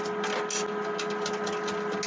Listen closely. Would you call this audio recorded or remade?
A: recorded